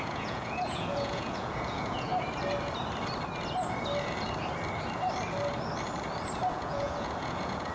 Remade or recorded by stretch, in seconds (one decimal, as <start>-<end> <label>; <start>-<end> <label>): 0.0-2.1 remade; 2.1-6.5 recorded; 6.5-7.7 remade